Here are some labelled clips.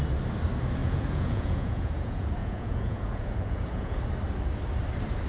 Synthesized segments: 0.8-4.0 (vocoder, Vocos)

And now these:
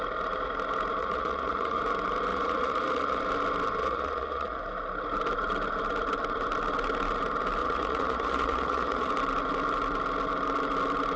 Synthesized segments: 1.0-1.8 (vocoder, Vocos); 2.3-3.2; 3.8-4.6; 7.6-9.1

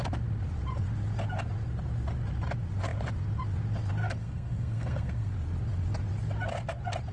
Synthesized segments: 4.0-5.3 (codec, SNAC)

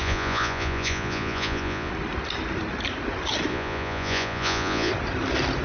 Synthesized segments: 0.0-1.9 (vocoder, Vocos); 3.5-4.9

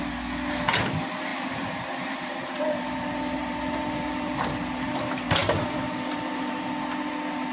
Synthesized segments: 1.3-5.0 (vocoder, BigVGAN v2); 5.4-6.7

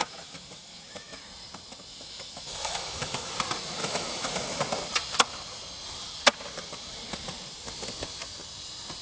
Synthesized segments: 0.0-1.2 (autoencoder, DAC-VAE); 1.9-3.3; 3.8-4.6